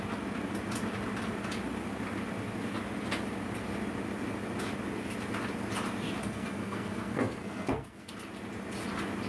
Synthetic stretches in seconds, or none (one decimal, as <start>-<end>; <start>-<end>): 6.2-8.1